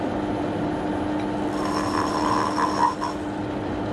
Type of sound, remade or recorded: recorded